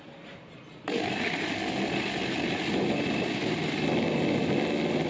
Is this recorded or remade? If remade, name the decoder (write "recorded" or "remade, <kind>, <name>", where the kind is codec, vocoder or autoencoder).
recorded